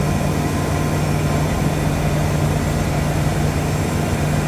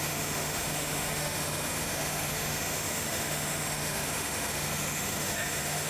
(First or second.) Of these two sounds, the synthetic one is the second